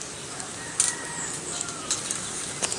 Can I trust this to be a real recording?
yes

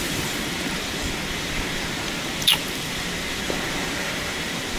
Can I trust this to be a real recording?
no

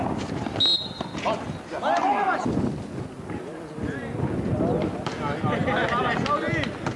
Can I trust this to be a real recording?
yes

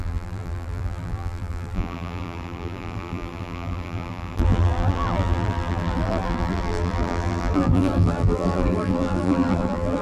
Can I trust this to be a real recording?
no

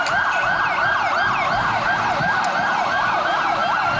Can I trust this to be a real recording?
yes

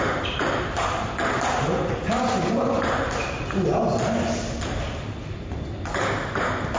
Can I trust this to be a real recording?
yes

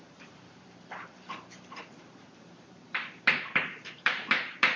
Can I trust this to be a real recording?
no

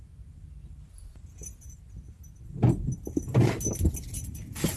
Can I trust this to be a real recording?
yes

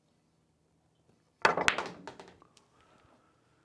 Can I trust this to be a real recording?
yes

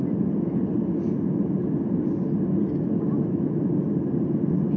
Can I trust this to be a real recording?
yes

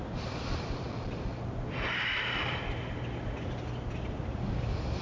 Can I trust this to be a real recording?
yes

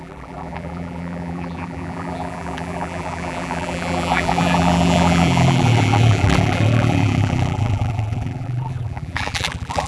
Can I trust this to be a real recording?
no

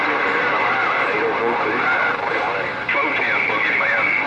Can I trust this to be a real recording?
no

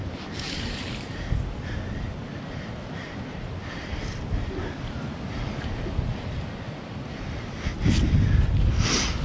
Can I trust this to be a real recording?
yes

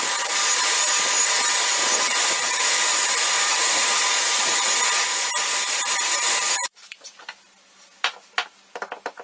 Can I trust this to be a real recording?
no